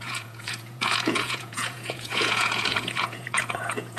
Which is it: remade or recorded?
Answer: remade